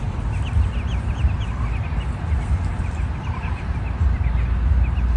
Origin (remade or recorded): recorded